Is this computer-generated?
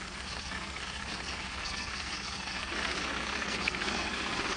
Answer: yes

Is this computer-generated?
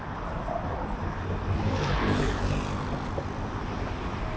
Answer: no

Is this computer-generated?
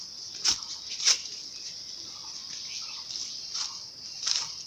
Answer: yes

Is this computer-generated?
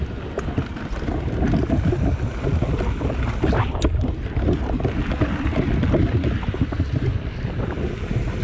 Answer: no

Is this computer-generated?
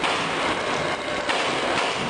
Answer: no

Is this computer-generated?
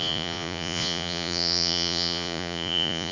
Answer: yes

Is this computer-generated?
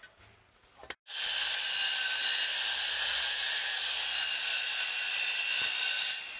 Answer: no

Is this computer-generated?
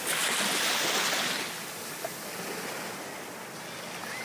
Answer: no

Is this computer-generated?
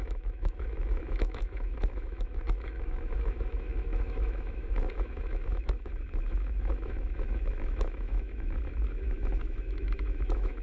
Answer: yes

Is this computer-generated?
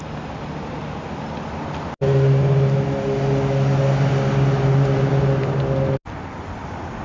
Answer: no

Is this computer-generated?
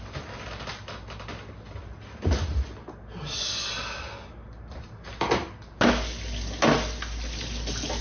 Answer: no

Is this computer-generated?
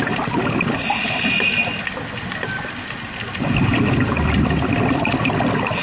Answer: yes